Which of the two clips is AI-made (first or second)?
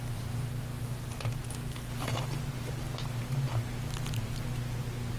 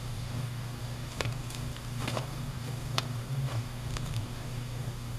second